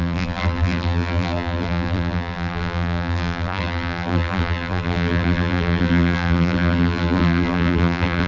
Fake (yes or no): yes